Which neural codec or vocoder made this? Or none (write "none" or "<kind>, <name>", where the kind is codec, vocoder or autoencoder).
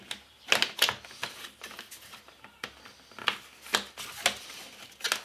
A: none